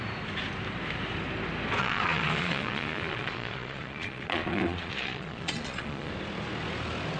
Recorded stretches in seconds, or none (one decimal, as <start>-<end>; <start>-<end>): 0.0-1.8; 6.1-7.2